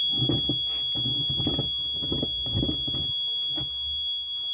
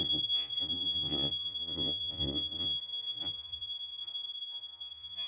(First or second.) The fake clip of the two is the second